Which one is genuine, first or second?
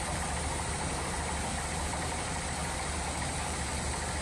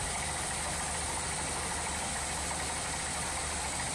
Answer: second